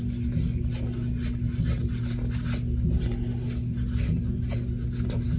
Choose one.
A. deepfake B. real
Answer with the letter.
B